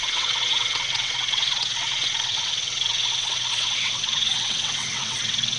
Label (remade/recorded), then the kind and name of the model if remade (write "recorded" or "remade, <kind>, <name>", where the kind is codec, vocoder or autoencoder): remade, vocoder, WaveNeXt